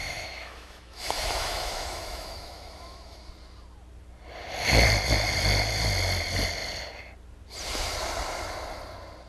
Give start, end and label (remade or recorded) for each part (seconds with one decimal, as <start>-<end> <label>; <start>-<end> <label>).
0.0-3.3 remade; 3.3-9.3 recorded

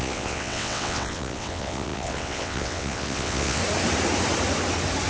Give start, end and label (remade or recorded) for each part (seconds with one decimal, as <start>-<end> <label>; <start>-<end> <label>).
0.0-3.6 remade; 3.6-5.1 recorded